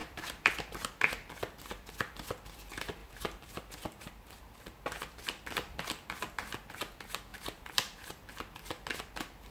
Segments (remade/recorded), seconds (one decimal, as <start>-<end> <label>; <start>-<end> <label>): 0.0-0.5 remade; 0.5-3.0 recorded; 3.0-5.2 remade; 5.2-7.3 recorded; 7.3-8.3 remade; 8.3-9.5 recorded